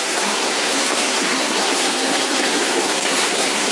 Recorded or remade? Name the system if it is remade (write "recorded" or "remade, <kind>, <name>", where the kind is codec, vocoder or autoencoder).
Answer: remade, codec, SNAC